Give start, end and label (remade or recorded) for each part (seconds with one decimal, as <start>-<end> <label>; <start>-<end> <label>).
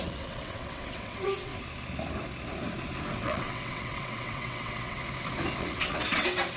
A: 0.0-1.5 remade; 1.5-3.1 recorded; 3.1-5.0 remade; 5.0-5.6 recorded; 5.6-6.6 remade